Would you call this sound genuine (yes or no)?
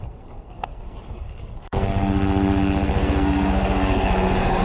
no